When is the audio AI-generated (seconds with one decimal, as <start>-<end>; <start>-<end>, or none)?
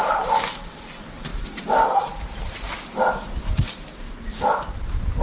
0.0-5.2